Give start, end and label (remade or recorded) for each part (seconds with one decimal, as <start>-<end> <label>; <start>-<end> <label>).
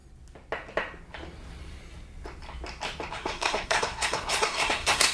0.0-3.1 recorded; 3.1-5.1 remade